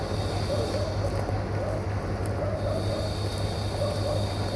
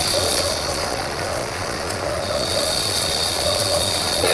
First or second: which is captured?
first